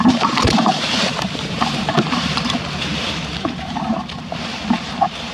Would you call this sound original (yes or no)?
no